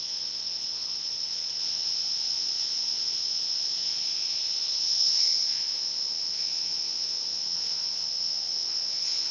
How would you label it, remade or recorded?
remade